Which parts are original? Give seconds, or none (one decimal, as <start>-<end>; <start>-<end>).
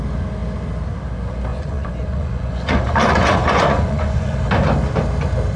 0.0-1.5; 4.4-5.6